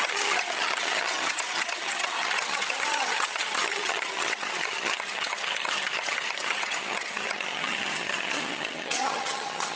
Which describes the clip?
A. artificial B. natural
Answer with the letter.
A